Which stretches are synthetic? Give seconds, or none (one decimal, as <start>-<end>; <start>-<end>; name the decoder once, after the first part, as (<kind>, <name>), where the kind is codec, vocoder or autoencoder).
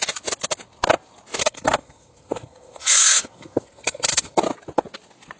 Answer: 1.4-4.4 (codec, SNAC)